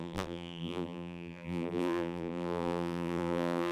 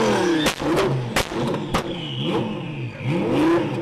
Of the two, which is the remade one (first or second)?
first